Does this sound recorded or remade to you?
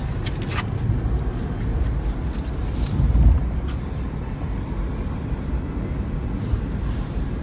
recorded